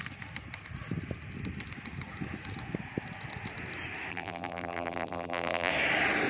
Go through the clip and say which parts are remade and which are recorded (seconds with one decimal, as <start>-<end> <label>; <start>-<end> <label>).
0.0-4.1 recorded; 4.1-5.7 remade; 5.7-6.3 recorded